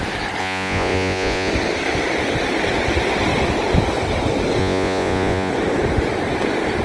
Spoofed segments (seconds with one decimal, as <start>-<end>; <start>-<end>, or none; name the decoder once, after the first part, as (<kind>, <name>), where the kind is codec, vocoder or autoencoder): 0.4-1.5 (vocoder, Vocos); 4.6-5.5